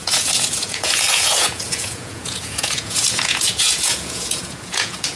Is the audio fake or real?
fake